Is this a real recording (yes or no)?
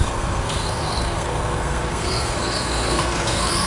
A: no